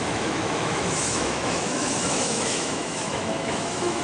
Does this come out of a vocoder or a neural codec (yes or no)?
yes